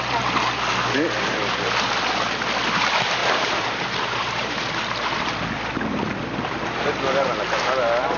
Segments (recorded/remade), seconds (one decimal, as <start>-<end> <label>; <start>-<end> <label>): 0.0-3.2 recorded; 3.2-4.7 remade; 4.7-8.2 recorded